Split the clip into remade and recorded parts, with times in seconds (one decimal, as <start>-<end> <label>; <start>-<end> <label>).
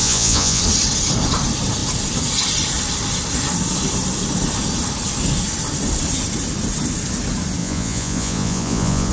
0.0-0.6 remade; 0.6-7.6 recorded; 7.6-9.1 remade